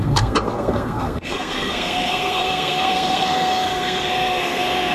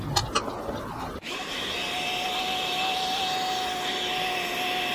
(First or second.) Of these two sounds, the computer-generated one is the first